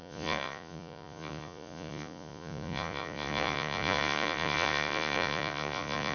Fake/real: fake